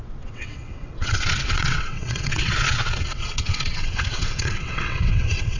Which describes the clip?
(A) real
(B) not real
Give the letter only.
B